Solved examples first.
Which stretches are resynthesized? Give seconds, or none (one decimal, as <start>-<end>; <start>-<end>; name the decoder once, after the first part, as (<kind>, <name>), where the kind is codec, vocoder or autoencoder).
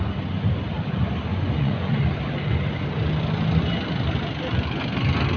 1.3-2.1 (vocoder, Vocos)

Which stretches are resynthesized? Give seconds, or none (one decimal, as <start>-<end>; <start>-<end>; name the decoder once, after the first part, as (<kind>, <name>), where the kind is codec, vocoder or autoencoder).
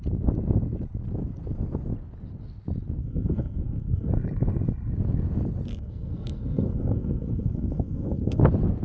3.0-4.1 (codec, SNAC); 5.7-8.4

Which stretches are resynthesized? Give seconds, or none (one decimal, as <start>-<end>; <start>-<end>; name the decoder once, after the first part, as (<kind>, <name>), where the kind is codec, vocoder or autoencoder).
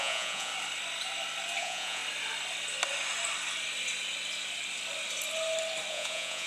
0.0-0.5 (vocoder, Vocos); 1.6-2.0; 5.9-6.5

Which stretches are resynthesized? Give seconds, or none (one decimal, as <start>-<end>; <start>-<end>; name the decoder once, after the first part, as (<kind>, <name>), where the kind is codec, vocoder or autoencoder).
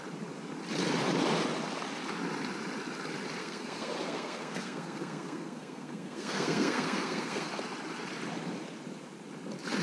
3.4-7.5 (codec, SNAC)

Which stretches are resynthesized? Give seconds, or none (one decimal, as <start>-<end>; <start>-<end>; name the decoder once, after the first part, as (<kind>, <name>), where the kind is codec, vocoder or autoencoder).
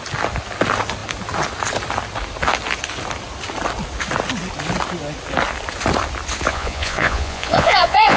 6.5-8.2 (vocoder, Vocos)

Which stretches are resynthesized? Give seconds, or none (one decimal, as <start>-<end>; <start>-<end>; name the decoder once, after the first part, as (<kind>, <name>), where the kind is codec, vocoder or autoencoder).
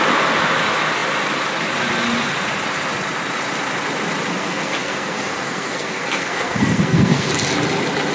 4.4-7.3 (codec, SNAC)